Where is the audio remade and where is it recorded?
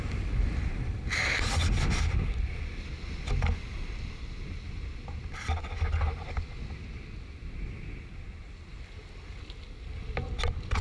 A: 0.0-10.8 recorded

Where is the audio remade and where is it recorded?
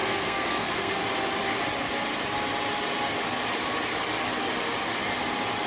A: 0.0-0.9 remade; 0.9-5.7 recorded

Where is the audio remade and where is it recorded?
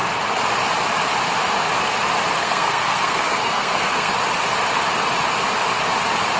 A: 0.0-2.4 recorded; 2.4-4.1 remade; 4.1-6.4 recorded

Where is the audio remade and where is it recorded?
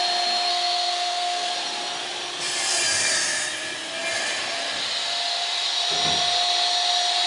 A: 0.0-0.5 recorded; 0.5-1.5 remade; 1.5-7.3 recorded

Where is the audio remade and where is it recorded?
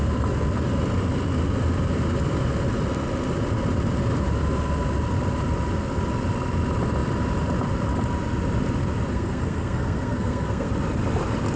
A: 0.0-9.1 recorded; 9.1-10.7 remade; 10.7-11.6 recorded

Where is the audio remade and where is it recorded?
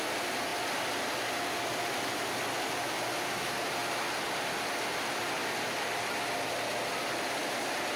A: 0.0-8.0 recorded